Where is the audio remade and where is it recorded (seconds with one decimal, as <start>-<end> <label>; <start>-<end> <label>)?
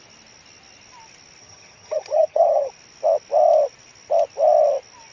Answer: 0.0-1.4 recorded; 1.4-2.7 remade; 2.7-5.1 recorded